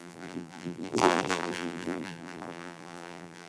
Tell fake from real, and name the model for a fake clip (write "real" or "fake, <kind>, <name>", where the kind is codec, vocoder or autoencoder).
fake, vocoder, BigVGAN v2